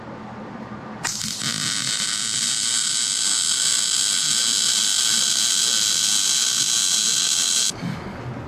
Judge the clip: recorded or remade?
recorded